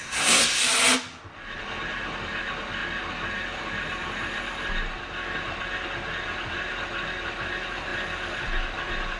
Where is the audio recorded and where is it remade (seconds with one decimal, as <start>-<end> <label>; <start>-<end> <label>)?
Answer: 0.0-0.6 remade; 0.6-9.2 recorded